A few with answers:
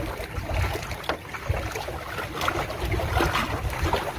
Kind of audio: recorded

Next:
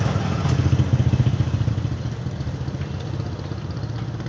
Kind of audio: recorded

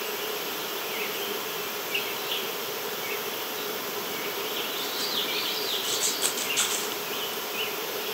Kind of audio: recorded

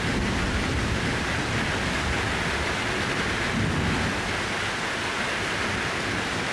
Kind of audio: recorded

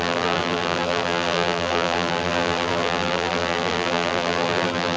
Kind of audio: remade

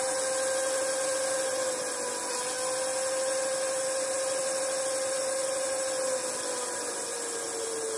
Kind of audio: recorded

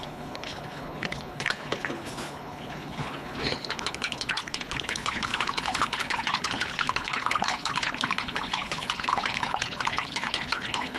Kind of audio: remade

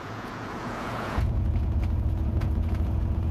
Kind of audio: remade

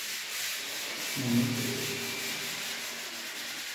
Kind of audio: recorded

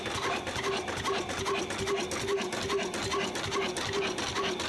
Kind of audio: recorded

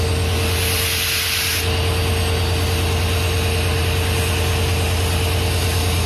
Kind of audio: recorded